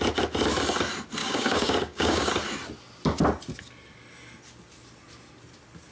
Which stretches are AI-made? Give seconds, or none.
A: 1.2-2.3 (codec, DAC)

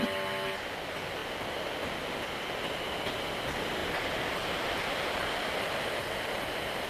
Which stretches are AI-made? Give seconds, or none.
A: none

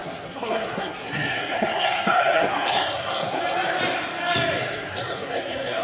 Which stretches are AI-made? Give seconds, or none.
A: 0.0-3.4 (codec, SNAC); 4.6-5.8

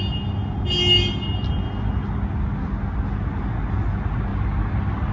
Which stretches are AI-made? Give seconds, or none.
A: none

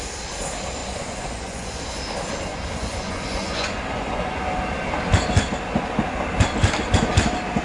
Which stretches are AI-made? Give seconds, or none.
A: 0.8-1.8 (vocoder, Vocos); 2.5-4.4

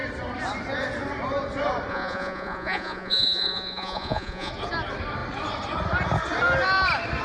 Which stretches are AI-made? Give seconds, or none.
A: 1.9-4.5 (vocoder, Vocos)